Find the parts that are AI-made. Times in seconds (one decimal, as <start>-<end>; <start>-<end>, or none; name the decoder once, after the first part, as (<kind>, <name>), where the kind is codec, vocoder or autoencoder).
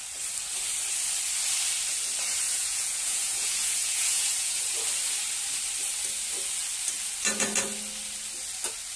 2.5-4.6 (vocoder, Vocos)